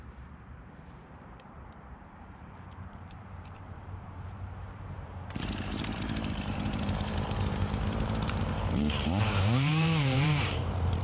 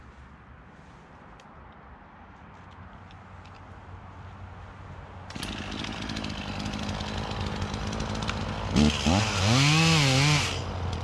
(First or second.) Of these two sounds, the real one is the second